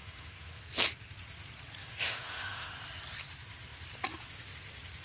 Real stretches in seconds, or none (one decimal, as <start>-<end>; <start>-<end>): 0.6-1.8; 2.7-5.0

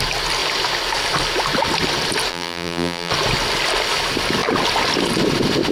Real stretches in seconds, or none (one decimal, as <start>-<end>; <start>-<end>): 0.0-2.3; 3.1-5.7

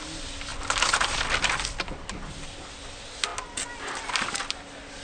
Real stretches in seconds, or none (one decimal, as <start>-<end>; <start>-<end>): 0.0-5.0

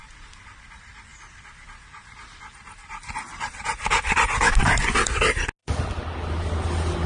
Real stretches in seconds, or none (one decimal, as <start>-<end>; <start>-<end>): 0.0-7.1

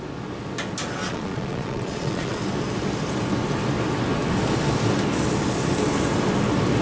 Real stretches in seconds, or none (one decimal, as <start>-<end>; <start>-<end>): 0.0-1.0; 2.4-6.8

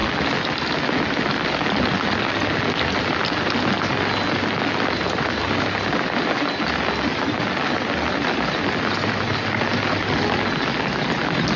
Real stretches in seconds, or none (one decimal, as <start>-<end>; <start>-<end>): 0.0-11.6

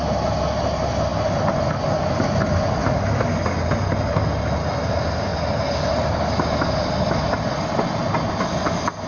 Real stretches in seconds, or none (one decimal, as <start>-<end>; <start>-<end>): 0.0-9.1

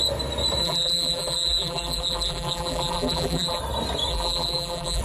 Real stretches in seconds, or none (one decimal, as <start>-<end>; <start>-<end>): 0.0-0.6; 3.6-4.1